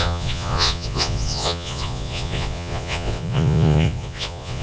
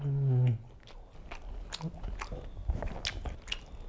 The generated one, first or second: first